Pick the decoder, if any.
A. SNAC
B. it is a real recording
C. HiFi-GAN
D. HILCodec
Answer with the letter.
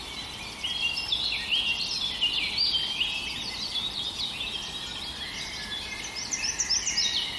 B